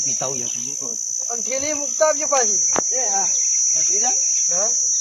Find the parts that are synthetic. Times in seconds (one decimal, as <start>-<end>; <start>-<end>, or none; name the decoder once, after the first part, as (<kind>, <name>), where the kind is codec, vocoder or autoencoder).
none